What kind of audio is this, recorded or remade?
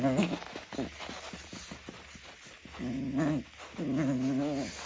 recorded